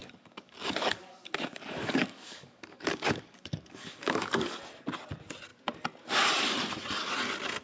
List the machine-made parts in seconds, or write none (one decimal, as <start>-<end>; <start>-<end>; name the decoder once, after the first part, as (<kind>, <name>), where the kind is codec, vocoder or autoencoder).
0.0-4.6 (codec, DAC)